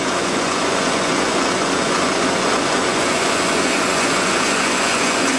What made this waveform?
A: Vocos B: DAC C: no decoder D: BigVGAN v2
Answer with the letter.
A